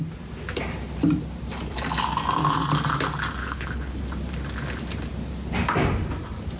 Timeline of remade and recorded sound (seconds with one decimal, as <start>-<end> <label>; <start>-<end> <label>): 0.0-3.4 recorded; 3.4-4.0 remade; 4.0-6.6 recorded